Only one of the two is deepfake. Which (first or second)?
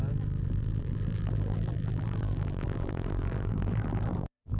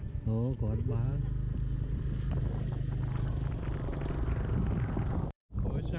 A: first